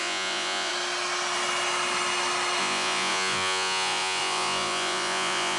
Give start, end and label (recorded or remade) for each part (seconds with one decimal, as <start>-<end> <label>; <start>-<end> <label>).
0.0-0.7 remade; 0.7-2.6 recorded; 2.6-5.6 remade